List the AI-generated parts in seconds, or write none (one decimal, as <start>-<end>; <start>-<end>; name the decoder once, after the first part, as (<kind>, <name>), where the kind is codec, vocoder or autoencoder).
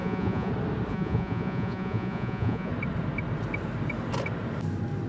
0.0-0.5 (vocoder, Vocos); 0.9-2.7